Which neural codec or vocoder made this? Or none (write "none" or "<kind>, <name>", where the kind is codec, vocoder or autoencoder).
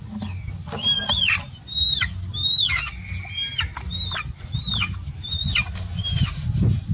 none